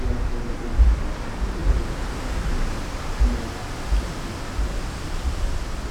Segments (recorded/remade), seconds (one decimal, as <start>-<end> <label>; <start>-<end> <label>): 0.0-5.9 recorded